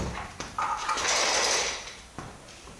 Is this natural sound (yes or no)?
yes